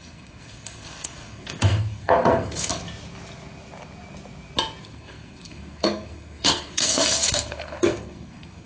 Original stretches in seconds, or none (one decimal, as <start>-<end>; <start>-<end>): 2.8-4.8